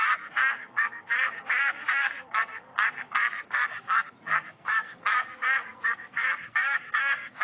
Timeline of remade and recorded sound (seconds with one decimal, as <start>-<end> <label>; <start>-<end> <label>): 0.0-7.4 remade